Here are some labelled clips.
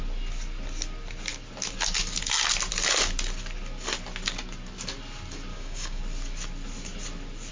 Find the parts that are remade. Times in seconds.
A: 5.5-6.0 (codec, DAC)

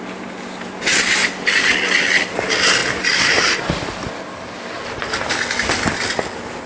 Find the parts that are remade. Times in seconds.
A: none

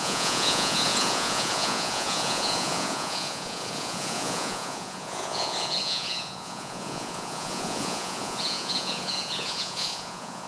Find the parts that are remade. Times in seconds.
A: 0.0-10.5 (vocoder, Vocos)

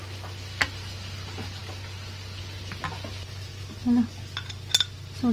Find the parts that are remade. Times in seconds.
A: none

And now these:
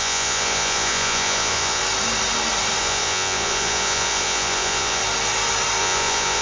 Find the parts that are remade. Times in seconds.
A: 0.0-1.8 (vocoder, Vocos); 2.8-5.0; 5.8-6.4

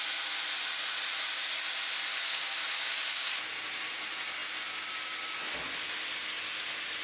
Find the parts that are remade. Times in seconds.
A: 2.1-3.3 (codec, DAC)

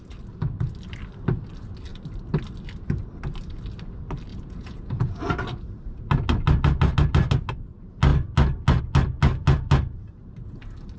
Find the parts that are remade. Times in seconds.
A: 4.3-5.2 (vocoder, Vocos)

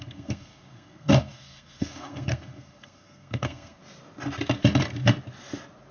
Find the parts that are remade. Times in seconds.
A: 0.0-3.8 (codec, SNAC)